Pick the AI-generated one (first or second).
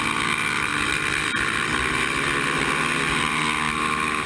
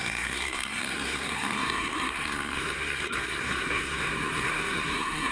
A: second